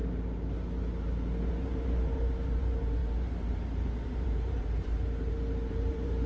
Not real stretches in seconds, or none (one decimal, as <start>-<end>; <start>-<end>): 1.5-5.0; 5.7-6.3